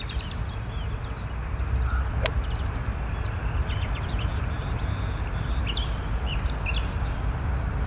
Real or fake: real